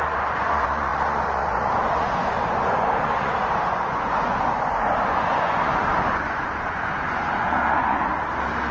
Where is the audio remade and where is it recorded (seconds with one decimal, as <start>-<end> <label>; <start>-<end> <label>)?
0.0-8.1 remade; 8.1-8.7 recorded